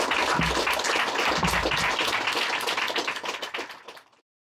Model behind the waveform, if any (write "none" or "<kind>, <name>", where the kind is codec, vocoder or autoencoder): none